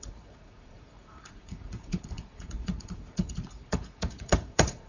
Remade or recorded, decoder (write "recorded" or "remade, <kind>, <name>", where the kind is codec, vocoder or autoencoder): remade, vocoder, Vocos